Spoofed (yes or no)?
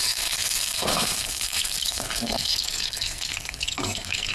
yes